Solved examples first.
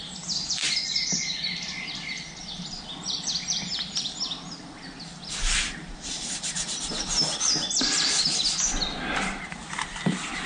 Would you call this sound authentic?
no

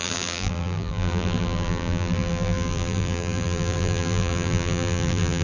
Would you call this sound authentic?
no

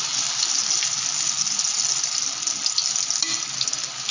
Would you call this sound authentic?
yes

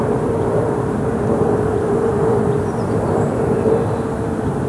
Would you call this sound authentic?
no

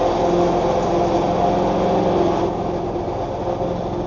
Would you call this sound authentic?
yes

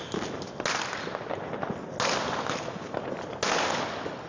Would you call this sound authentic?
yes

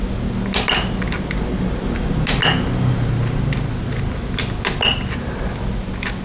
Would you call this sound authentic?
yes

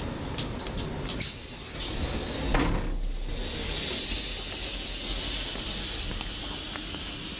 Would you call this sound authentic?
yes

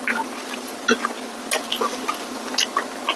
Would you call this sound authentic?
yes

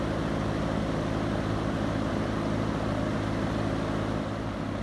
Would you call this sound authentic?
yes